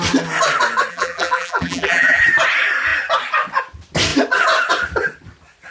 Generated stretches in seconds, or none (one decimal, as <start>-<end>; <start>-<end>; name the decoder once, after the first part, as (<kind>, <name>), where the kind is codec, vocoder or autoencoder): 0.9-2.2 (vocoder, BigVGAN v2)